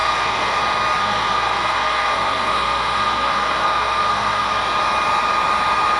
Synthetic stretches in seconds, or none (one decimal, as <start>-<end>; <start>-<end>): 0.0-0.6; 1.0-4.6

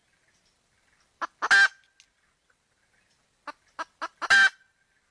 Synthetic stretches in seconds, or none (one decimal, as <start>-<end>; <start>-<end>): none

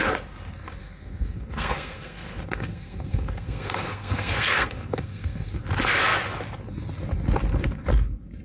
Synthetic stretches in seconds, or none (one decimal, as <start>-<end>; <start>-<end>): 0.8-5.6